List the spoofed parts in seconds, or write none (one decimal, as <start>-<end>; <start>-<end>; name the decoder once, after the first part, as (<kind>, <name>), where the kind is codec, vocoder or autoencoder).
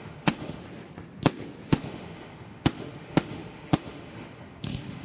0.0-0.6 (autoencoder, DAC-VAE); 1.7-5.0